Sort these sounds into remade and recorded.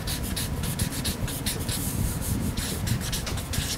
recorded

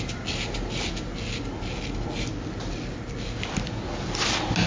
recorded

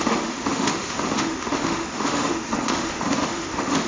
remade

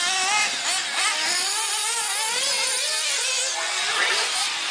recorded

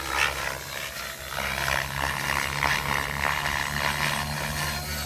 recorded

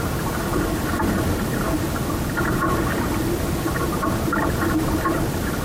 recorded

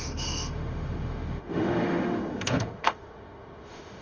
remade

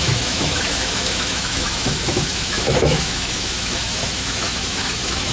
remade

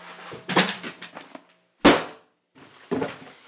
recorded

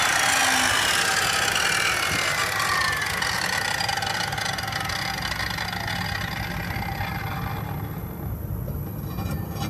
recorded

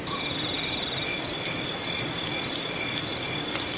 recorded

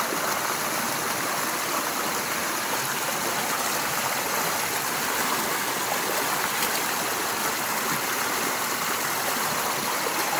recorded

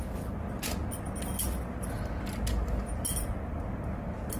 recorded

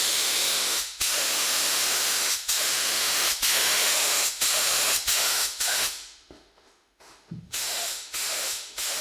remade